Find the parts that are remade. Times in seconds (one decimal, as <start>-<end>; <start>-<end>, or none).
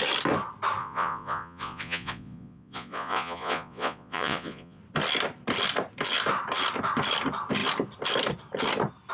0.8-4.8